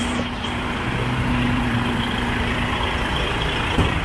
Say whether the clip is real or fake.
fake